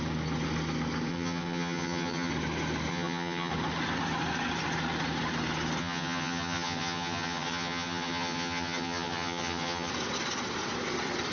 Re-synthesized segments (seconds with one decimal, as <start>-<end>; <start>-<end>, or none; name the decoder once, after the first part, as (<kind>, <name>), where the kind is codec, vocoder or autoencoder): 1.1-2.3 (vocoder, HiFi-GAN); 2.9-3.5; 5.8-9.9